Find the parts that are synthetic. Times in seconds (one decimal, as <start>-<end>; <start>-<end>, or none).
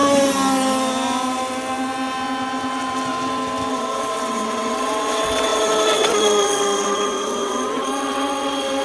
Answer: 3.7-8.8